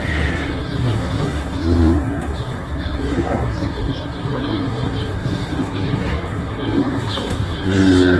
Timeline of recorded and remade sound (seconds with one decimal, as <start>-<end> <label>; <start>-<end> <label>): 0.0-8.2 remade